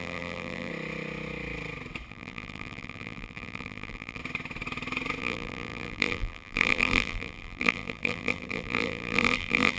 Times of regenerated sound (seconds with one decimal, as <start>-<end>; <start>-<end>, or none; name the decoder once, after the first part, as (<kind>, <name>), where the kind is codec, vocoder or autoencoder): 0.0-0.7 (vocoder, BigVGAN v2); 2.1-4.2; 5.2-9.8